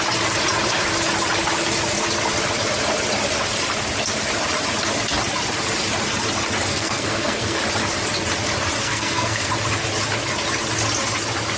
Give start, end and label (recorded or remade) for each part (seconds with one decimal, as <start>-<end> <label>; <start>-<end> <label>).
0.0-6.7 recorded; 6.7-7.6 remade; 7.6-8.8 recorded; 8.8-9.5 remade; 9.5-11.6 recorded